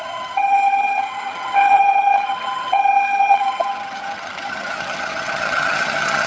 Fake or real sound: fake